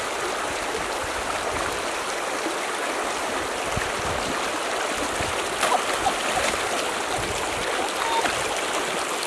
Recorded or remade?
recorded